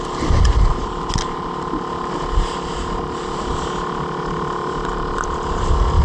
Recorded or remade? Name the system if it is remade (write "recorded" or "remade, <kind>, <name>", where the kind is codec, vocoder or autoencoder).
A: recorded